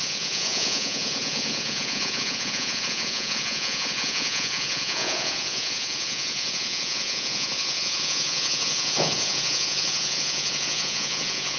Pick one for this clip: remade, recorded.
remade